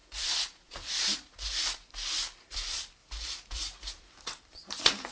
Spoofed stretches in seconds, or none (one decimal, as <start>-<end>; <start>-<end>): 0.0-1.9; 3.0-3.9